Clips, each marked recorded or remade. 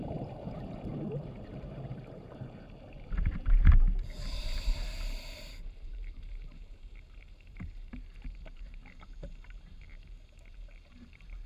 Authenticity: remade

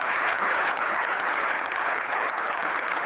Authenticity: remade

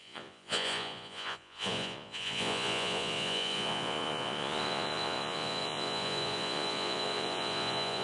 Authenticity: remade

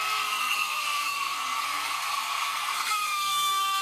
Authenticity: remade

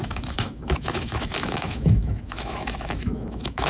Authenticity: remade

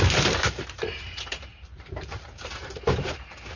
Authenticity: remade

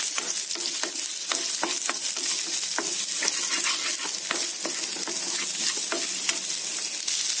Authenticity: recorded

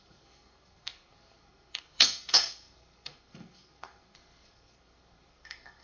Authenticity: remade